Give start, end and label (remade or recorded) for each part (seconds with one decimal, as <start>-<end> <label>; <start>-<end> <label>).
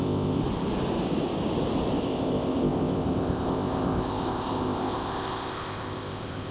0.0-0.4 remade; 0.4-2.0 recorded; 2.0-6.5 remade